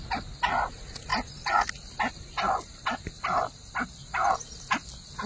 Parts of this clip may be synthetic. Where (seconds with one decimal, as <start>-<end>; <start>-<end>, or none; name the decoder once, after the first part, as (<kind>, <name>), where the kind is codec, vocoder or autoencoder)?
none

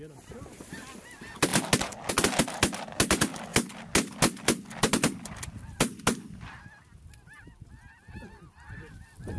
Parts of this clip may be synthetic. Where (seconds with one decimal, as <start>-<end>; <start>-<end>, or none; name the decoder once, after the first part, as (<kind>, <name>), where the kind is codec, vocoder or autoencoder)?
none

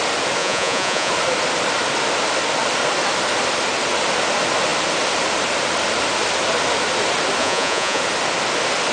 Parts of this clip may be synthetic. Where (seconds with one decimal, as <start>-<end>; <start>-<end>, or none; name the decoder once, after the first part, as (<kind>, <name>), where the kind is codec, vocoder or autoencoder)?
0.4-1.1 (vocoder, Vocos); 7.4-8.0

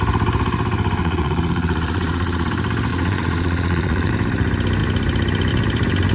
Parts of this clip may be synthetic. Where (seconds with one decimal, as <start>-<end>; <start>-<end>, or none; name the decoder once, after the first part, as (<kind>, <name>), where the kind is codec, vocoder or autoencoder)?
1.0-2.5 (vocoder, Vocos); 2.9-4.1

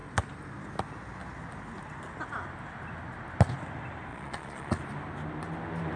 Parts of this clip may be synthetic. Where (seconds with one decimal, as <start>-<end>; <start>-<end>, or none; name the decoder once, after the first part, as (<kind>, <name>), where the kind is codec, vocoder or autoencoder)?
4.1-4.8 (vocoder, Vocos)

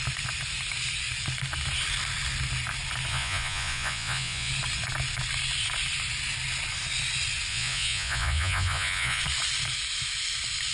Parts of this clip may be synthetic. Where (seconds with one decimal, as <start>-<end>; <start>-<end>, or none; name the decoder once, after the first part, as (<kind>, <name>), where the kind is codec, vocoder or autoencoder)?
3.1-4.5 (vocoder, Vocos); 7.5-9.2

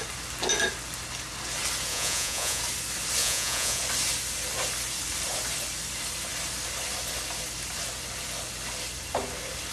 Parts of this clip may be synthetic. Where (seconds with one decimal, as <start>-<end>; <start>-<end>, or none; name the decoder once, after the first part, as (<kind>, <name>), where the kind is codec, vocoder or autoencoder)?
1.9-2.6 (vocoder, Vocos); 3.2-3.8